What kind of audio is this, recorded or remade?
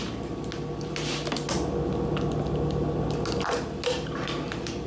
recorded